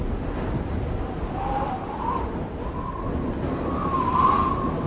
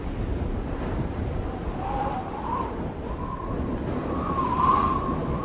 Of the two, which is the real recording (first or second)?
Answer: first